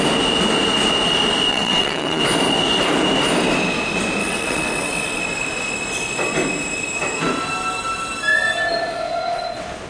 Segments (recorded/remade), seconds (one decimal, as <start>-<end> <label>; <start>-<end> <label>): 0.0-1.5 recorded; 1.5-2.2 remade; 2.2-4.2 recorded; 4.2-5.2 remade; 5.2-9.9 recorded